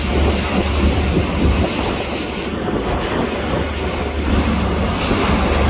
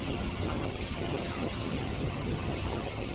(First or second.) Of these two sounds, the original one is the first